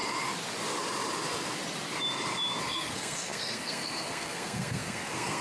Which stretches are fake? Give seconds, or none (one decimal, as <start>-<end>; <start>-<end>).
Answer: 2.6-5.4